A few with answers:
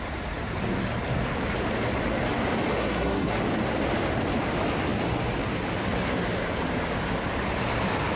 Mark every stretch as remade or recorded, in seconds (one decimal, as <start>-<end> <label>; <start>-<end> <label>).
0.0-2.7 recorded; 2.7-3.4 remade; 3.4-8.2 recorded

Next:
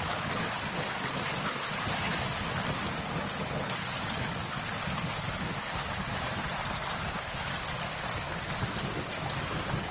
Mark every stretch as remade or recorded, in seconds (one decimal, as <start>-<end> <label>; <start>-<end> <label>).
0.0-9.9 recorded

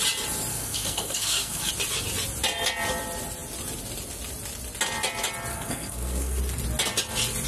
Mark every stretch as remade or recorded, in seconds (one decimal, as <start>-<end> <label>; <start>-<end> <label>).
0.0-0.5 recorded; 0.5-1.7 remade; 1.7-5.5 recorded; 5.5-6.4 remade; 6.4-7.5 recorded

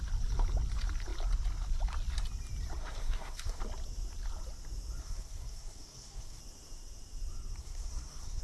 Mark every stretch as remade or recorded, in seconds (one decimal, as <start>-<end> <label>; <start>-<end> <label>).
0.0-2.8 recorded; 2.8-3.6 remade; 3.6-5.0 recorded; 5.0-6.4 remade; 6.4-7.6 recorded; 7.6-8.4 remade